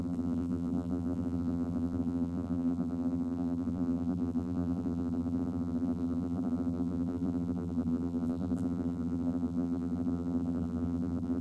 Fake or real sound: fake